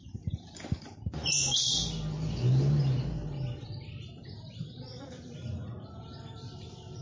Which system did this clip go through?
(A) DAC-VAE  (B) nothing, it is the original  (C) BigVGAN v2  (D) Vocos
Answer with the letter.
B